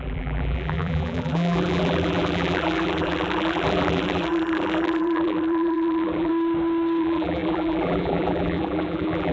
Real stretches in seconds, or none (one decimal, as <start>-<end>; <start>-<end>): 6.3-7.0